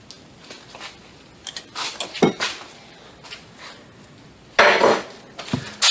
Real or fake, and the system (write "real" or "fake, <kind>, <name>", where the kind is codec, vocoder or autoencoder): real